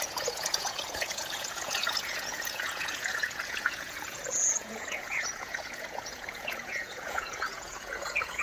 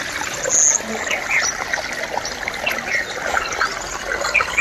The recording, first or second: second